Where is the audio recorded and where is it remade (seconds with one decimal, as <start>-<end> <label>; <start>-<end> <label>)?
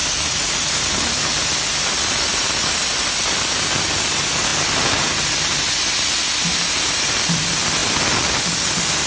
0.0-0.9 remade; 0.9-2.3 recorded; 2.3-3.3 remade; 3.3-9.1 recorded